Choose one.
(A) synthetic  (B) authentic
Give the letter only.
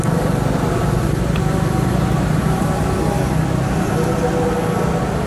B